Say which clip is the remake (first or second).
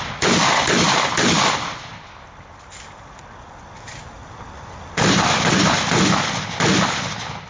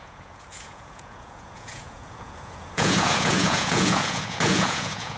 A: second